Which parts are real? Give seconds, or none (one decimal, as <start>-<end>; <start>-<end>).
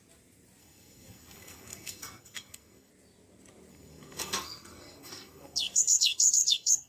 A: 0.0-0.6; 2.9-3.7